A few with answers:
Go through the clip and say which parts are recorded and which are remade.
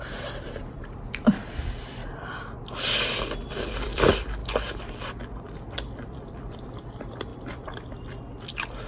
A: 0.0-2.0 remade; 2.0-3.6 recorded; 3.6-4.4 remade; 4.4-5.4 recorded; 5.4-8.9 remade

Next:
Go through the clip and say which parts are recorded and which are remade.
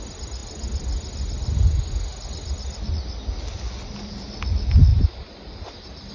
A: 0.0-4.9 recorded; 4.9-6.1 remade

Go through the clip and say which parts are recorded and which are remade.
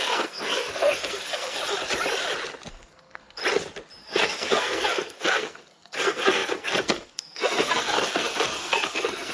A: 0.0-1.6 remade; 1.6-2.7 recorded; 2.7-3.4 remade; 3.4-4.0 recorded; 4.0-9.3 remade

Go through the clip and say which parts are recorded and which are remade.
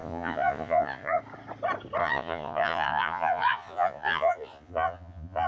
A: 0.0-1.2 remade; 1.2-2.0 recorded; 2.0-5.5 remade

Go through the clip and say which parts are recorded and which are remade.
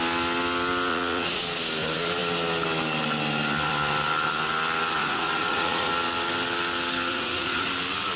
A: 0.0-0.9 recorded; 0.9-1.4 remade; 1.4-5.0 recorded; 5.0-5.9 remade; 5.9-7.1 recorded; 7.1-7.7 remade; 7.7-8.2 recorded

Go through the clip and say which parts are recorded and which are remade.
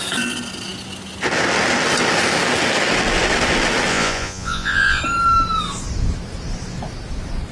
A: 0.0-3.9 recorded; 3.9-5.0 remade; 5.0-7.5 recorded